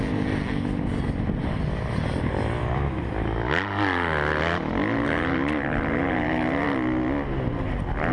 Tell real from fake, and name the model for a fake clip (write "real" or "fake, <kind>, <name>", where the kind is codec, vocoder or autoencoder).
real